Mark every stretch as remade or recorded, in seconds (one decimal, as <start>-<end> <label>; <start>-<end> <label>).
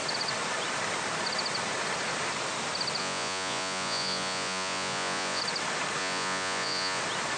0.0-3.0 recorded; 3.0-5.4 remade; 5.4-6.0 recorded; 6.0-7.0 remade; 7.0-7.4 recorded